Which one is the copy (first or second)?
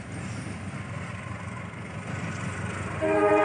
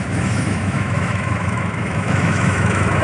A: second